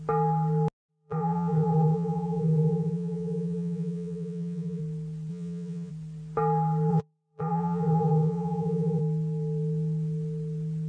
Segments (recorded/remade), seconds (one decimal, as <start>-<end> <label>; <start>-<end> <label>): 0.0-0.9 recorded; 0.9-4.8 remade; 4.8-5.3 recorded; 5.3-5.9 remade; 5.9-6.9 recorded; 6.9-9.0 remade; 9.0-10.9 recorded